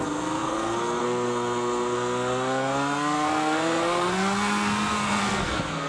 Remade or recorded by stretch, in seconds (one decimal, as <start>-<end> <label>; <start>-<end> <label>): 0.0-5.9 remade